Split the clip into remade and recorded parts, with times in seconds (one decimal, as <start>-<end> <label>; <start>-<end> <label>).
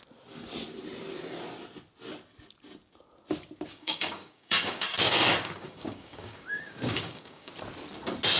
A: 0.0-3.7 recorded; 3.7-7.5 remade; 7.5-8.4 recorded